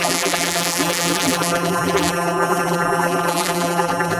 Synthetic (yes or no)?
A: yes